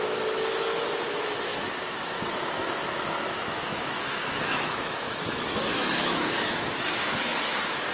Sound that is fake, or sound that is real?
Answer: fake